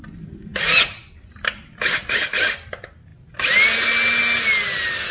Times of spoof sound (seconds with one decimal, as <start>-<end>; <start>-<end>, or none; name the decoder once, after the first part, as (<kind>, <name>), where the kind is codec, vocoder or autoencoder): none